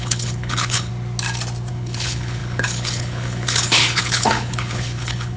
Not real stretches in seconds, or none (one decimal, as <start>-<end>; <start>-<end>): 0.0-0.9; 1.7-5.4